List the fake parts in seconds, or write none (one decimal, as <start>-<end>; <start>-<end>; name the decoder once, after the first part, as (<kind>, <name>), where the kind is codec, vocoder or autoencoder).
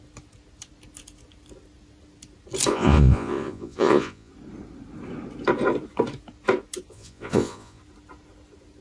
2.7-4.3 (vocoder, Vocos); 6.9-7.8